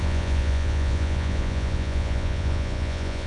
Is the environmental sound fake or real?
fake